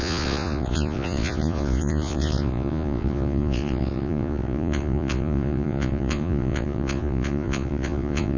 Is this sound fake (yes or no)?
yes